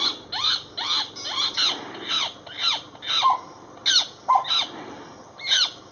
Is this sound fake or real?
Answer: real